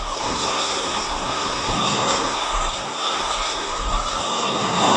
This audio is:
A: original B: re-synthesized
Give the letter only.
B